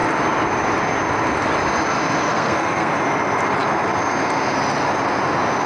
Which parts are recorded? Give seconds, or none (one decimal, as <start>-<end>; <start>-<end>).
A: 0.0-2.3; 2.9-5.7